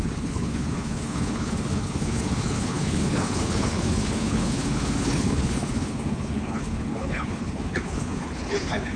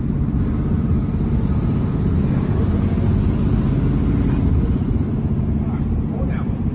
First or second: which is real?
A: second